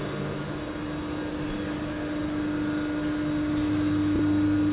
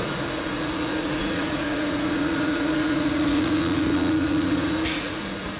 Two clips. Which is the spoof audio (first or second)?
second